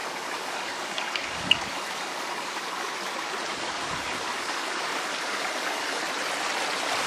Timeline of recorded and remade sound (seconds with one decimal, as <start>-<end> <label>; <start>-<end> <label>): 0.0-2.9 remade; 2.9-3.5 recorded; 3.5-6.0 remade; 6.0-7.1 recorded